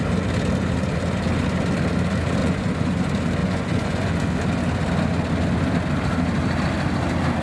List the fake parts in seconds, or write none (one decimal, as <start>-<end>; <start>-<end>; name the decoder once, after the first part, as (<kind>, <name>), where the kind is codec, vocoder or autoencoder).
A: 2.4-3.0 (vocoder, Vocos); 3.4-4.1